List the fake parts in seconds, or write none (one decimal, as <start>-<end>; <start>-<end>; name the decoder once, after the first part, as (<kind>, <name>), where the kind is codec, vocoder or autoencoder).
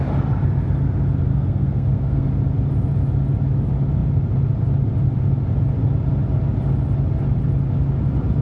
1.3-2.3 (codec, SNAC)